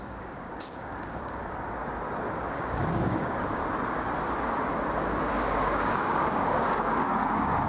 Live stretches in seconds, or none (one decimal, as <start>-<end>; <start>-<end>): 1.4-2.3; 3.6-5.3